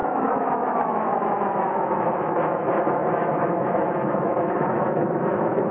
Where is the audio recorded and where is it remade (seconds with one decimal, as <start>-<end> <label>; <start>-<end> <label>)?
0.0-5.7 remade